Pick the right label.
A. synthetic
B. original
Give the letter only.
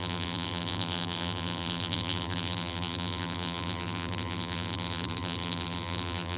A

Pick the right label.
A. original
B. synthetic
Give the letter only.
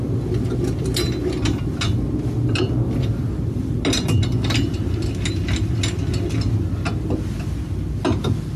A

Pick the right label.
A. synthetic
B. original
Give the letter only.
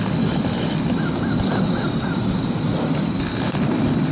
B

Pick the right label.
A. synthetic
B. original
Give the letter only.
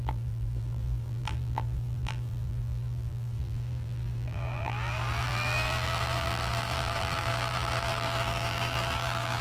A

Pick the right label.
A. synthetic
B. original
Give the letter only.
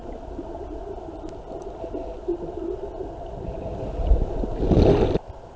B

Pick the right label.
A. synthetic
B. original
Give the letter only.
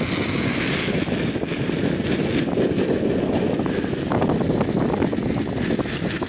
B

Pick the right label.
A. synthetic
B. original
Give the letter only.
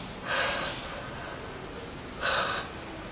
B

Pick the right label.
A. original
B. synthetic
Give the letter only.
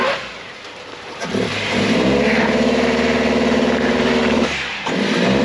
B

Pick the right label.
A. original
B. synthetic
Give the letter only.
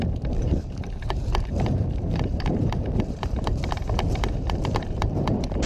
B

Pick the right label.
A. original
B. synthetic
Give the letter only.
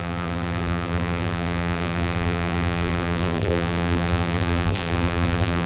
B